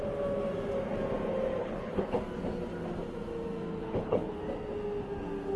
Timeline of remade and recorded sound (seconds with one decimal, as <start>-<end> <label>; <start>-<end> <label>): 0.0-1.6 recorded; 1.6-2.2 remade; 2.2-3.8 recorded; 3.8-4.4 remade; 4.4-5.6 recorded